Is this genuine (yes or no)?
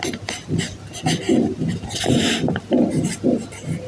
yes